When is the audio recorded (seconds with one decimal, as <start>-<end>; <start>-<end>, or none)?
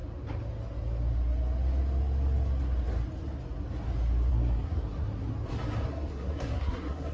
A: 0.0-4.3; 5.3-5.9